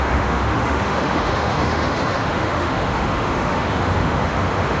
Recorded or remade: remade